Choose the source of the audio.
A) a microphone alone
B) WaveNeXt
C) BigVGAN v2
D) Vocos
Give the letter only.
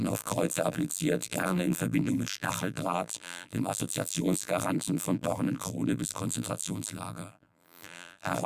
C